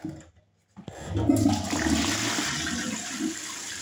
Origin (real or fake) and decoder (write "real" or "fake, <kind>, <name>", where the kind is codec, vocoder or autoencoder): real